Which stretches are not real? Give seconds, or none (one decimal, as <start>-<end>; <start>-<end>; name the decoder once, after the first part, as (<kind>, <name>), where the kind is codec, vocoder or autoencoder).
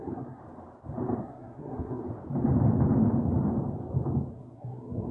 0.0-0.4 (codec, SNAC); 1.2-2.0; 4.3-5.1